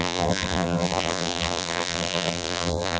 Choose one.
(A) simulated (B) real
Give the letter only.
A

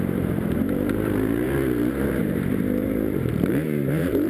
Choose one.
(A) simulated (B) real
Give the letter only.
A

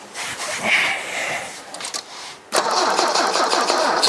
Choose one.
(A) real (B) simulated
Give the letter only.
B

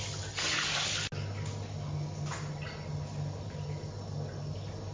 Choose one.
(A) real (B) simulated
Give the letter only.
A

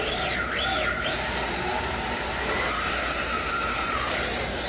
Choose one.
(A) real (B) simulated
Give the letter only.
B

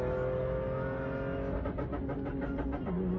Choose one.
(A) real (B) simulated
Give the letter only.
A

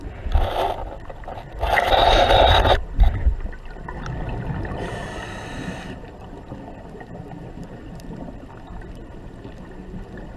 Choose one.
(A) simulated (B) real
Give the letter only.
B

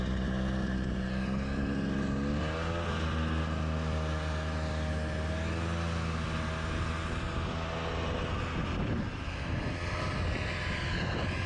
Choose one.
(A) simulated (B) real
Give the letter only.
B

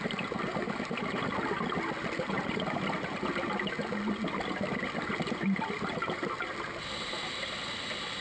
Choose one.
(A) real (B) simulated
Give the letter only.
A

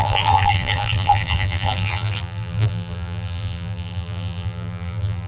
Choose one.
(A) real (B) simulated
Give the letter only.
B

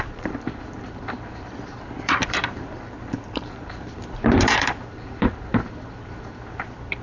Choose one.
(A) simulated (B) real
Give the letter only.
A